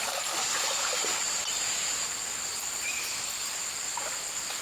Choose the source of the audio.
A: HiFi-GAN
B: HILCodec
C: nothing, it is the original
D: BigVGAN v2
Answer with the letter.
D